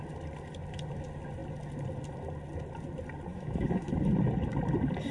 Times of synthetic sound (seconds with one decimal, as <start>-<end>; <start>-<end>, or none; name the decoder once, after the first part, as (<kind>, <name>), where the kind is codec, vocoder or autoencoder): 3.3-3.9 (autoencoder, DAC-VAE)